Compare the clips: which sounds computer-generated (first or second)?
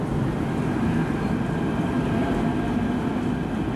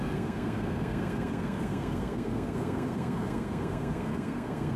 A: second